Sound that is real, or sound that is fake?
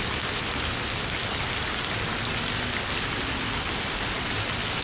real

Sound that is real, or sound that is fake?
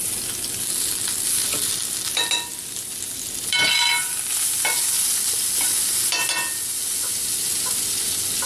real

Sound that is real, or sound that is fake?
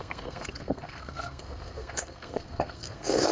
fake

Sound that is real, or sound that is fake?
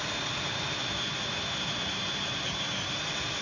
fake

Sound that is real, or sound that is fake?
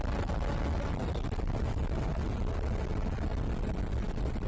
real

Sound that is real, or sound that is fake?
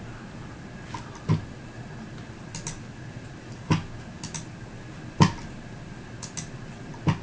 real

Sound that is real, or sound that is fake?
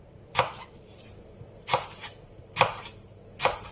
real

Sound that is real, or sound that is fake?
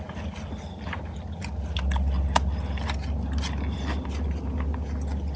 real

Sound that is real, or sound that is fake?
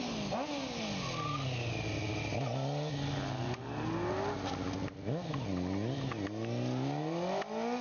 real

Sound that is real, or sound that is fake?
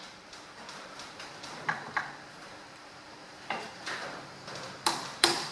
fake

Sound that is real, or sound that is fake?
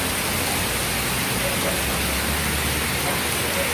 real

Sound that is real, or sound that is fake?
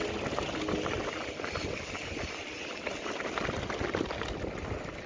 real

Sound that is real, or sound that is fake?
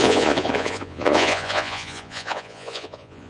fake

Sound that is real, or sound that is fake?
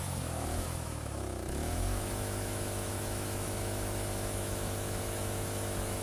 fake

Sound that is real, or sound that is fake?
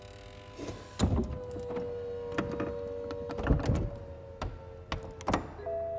real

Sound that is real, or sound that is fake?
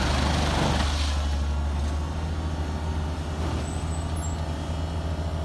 real